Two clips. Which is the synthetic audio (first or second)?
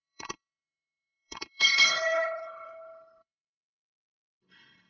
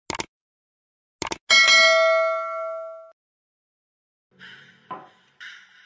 first